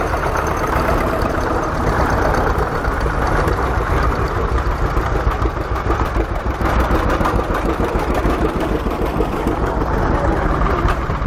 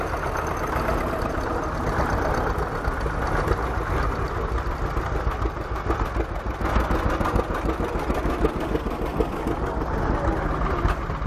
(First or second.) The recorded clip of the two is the second